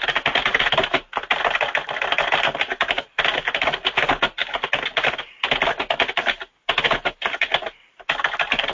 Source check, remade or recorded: recorded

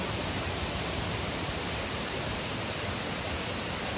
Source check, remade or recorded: remade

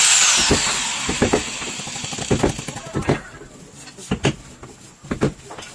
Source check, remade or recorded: recorded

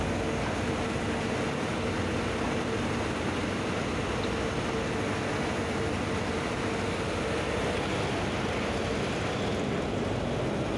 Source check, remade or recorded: recorded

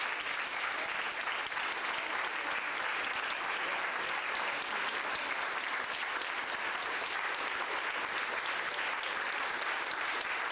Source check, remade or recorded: recorded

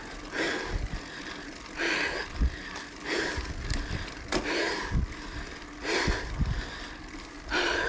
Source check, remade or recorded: recorded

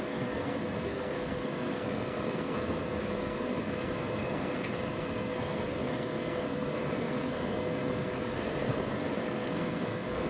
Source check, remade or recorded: remade